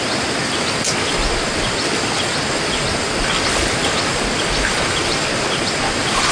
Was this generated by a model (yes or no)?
no